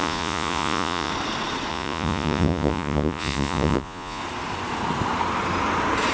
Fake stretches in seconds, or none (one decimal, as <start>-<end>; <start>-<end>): 0.0-1.1; 1.7-4.2